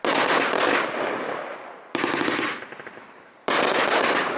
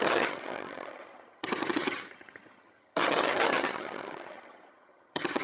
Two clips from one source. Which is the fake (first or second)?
second